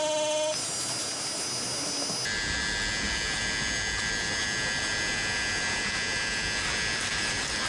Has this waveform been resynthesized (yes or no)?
no